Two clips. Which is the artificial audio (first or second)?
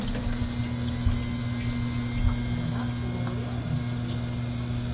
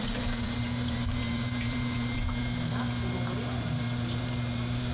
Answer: second